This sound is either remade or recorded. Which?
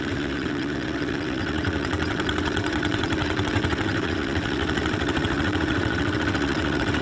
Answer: remade